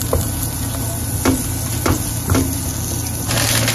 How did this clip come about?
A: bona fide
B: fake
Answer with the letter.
A